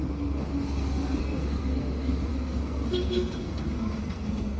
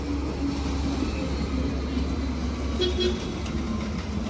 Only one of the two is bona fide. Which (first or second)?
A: second